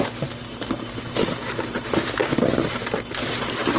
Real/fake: real